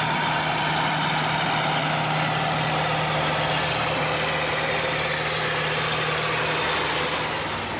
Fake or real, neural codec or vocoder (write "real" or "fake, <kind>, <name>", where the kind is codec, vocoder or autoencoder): real